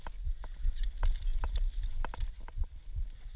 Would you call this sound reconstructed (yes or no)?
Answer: no